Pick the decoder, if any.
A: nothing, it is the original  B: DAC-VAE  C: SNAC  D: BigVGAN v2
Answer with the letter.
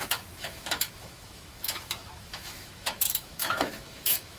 B